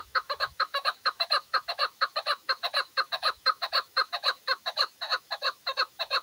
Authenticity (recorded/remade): remade